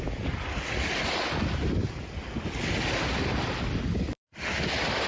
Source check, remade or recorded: recorded